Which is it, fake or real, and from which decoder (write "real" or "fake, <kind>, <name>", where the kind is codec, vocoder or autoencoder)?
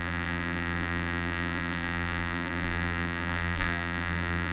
fake, vocoder, BigVGAN v2